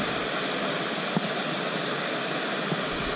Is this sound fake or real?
real